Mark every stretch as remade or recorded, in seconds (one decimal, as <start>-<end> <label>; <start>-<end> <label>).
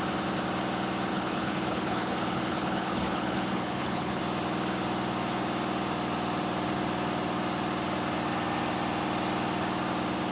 0.0-1.1 recorded; 1.1-4.2 remade; 4.2-10.3 recorded